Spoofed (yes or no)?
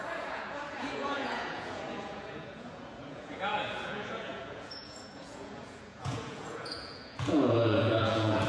yes